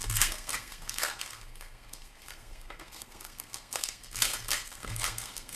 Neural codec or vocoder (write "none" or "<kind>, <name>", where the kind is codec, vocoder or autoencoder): codec, SNAC